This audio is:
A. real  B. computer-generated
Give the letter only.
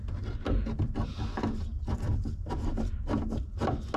A